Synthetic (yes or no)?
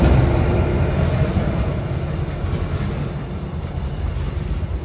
no